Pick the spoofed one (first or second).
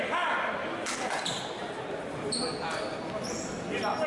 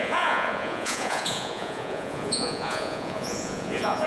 second